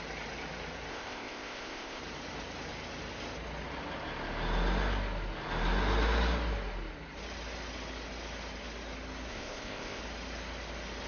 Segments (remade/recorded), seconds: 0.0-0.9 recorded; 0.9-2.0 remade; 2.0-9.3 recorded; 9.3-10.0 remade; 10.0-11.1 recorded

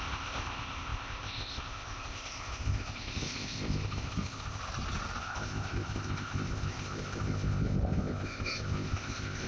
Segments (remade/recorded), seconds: 0.0-4.6 remade; 4.6-5.2 recorded; 5.2-9.5 remade

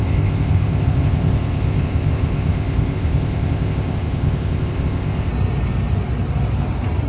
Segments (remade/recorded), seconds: 0.0-5.3 remade; 5.3-7.1 recorded

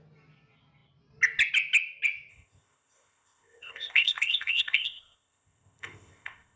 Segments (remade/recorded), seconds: 0.0-2.3 recorded; 2.3-6.6 remade

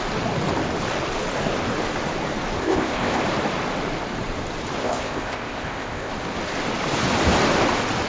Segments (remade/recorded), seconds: 0.0-2.6 recorded; 2.6-3.2 remade; 3.2-4.8 recorded; 4.8-6.1 remade; 6.1-8.1 recorded

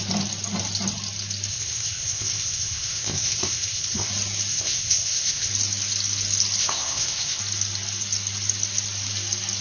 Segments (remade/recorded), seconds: 0.0-1.5 recorded; 1.5-4.1 remade; 4.1-4.5 recorded; 4.5-5.5 remade; 5.5-6.6 recorded; 6.6-7.4 remade; 7.4-9.6 recorded

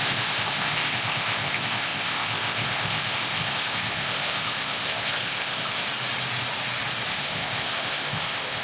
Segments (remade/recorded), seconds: 0.0-5.8 remade; 5.8-7.1 recorded; 7.1-8.6 remade

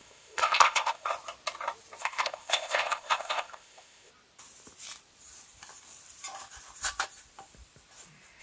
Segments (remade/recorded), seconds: 0.0-1.1 remade; 1.1-2.0 recorded; 2.0-4.1 remade; 4.1-8.4 recorded